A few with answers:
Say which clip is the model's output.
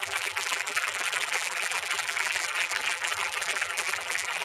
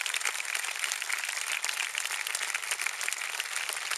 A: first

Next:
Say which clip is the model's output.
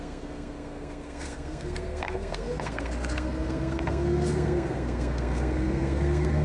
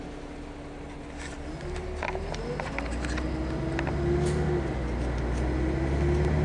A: first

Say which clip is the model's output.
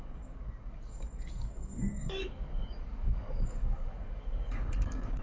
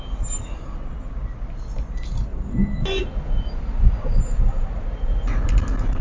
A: first